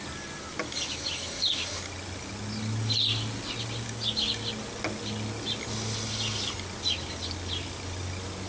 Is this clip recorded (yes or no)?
yes